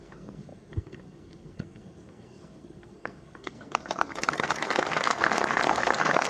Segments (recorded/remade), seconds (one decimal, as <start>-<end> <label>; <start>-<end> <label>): 0.0-6.3 remade